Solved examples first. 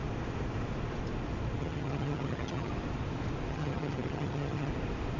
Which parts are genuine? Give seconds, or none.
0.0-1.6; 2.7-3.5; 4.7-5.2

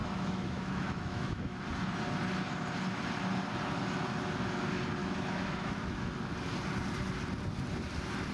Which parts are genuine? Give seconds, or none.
1.6-5.0; 6.1-8.3

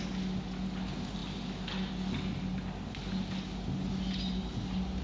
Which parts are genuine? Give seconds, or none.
0.0-5.0

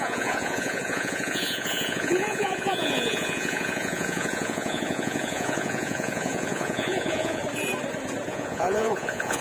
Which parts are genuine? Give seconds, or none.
7.4-8.3